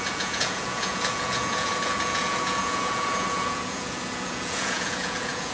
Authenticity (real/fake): fake